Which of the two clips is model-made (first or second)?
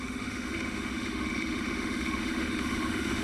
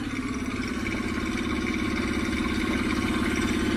first